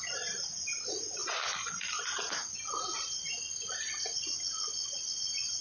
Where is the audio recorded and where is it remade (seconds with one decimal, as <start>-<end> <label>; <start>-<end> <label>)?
0.0-5.6 recorded